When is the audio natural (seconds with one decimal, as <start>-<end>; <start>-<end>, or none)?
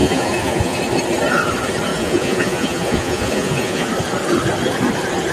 0.8-1.9; 3.9-5.3